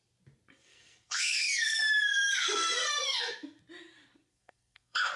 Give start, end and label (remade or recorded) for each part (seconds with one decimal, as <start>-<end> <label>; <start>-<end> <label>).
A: 0.0-0.6 recorded; 0.6-3.6 remade; 3.6-4.3 recorded; 4.3-5.2 remade